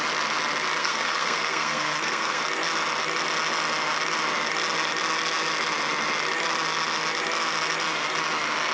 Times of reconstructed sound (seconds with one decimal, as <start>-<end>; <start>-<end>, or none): 0.8-2.4